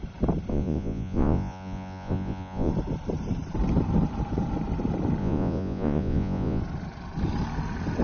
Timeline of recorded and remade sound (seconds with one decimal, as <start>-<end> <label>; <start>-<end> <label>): 0.0-0.5 recorded; 0.5-2.7 remade; 2.7-5.2 recorded; 5.2-6.6 remade; 6.6-8.0 recorded